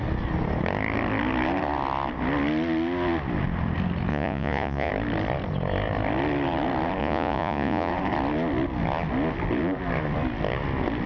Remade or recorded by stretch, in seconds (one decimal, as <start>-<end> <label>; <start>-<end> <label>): 0.0-4.1 recorded; 4.1-4.9 remade; 4.9-7.0 recorded; 7.0-7.9 remade; 7.9-11.1 recorded